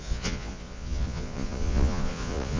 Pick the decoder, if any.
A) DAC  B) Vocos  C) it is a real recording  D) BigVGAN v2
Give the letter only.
B